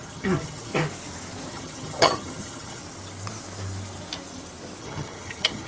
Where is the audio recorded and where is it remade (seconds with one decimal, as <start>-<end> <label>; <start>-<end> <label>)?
0.0-0.7 remade; 0.7-1.5 recorded; 1.5-2.8 remade; 2.8-4.8 recorded; 4.8-5.7 remade

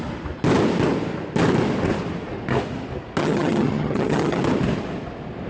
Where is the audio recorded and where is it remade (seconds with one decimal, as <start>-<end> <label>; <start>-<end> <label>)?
0.0-3.2 recorded; 3.2-4.4 remade; 4.4-5.5 recorded

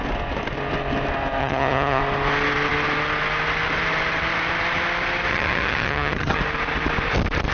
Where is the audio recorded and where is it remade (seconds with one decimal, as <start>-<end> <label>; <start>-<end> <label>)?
0.0-1.4 recorded; 1.4-2.0 remade; 2.0-5.3 recorded; 5.3-6.4 remade; 6.4-7.5 recorded